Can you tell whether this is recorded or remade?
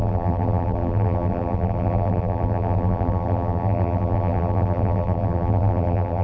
remade